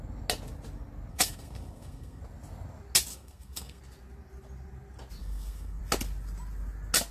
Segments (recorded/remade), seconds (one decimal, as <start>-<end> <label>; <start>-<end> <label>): 0.0-1.1 recorded; 1.1-2.2 remade; 2.2-3.1 recorded; 3.1-3.8 remade; 3.8-5.2 recorded; 5.2-5.8 remade; 5.8-7.1 recorded